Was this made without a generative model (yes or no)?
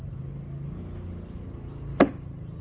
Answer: yes